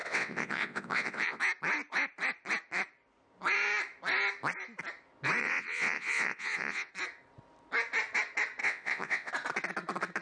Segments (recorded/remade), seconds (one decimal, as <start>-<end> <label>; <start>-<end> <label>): 0.0-1.4 remade; 1.4-5.4 recorded; 5.4-6.9 remade; 6.9-8.6 recorded; 8.6-9.3 remade; 9.3-10.2 recorded